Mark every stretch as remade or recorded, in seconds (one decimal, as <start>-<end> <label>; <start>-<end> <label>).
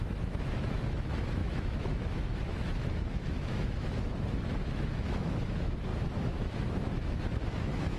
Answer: 0.0-8.0 remade